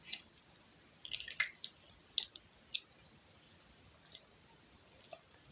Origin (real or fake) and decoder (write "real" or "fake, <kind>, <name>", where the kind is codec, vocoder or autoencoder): real